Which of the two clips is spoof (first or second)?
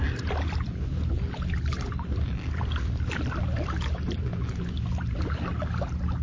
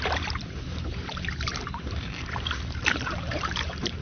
second